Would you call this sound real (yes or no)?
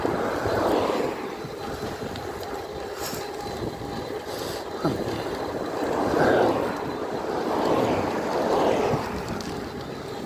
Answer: yes